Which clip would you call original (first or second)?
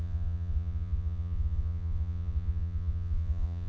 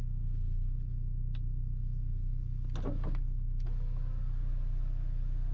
second